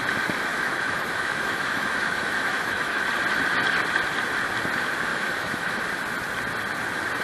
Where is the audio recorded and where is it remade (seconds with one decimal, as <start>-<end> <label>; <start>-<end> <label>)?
0.0-0.5 recorded; 0.5-3.0 remade; 3.0-5.1 recorded; 5.1-5.8 remade; 5.8-7.2 recorded